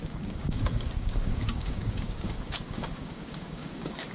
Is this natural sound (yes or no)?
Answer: no